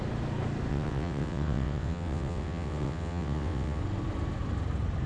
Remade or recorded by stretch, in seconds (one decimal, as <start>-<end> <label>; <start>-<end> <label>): 0.0-0.7 recorded; 0.7-3.8 remade; 3.8-5.1 recorded